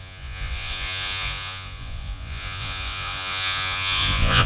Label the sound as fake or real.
fake